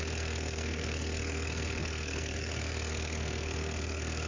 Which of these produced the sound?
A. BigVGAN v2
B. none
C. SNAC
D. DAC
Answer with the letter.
C